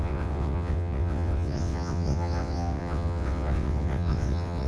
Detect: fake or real fake